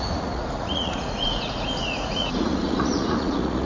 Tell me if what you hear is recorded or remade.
remade